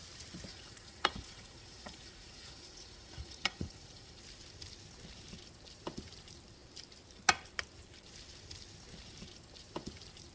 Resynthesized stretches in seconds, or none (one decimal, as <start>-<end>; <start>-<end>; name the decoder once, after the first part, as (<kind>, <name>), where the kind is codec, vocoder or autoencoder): 0.5-4.2 (vocoder, Vocos)